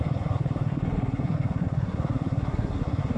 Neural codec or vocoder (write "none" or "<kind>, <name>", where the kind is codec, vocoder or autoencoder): codec, SNAC